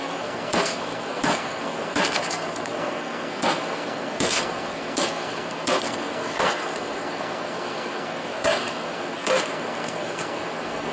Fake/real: fake